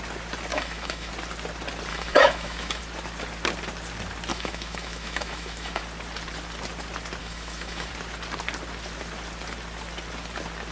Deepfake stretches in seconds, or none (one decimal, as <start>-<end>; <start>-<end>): 0.5-1.1; 1.9-2.8; 4.3-5.8; 7.2-7.9